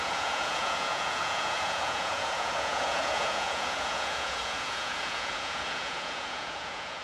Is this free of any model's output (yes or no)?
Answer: no